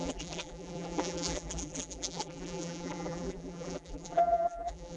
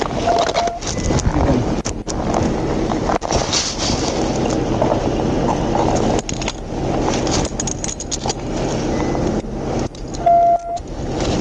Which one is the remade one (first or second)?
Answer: first